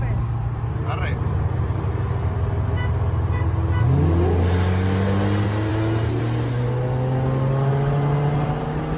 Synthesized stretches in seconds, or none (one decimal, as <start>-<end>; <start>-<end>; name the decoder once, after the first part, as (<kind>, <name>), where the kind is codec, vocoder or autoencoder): none